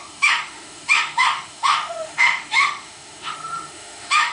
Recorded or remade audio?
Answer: remade